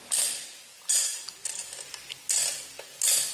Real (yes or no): yes